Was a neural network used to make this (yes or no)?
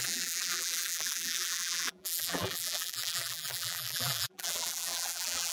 yes